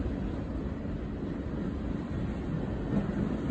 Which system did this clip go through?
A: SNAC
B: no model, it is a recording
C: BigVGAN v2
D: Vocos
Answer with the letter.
B